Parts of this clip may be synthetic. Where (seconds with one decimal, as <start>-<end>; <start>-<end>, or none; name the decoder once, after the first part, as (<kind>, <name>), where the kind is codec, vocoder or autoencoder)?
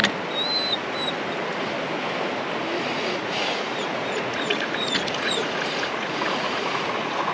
3.0-7.3 (vocoder, Vocos)